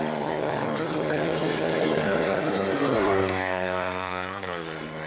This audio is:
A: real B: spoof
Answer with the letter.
B